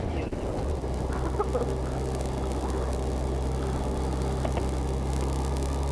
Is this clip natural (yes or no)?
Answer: yes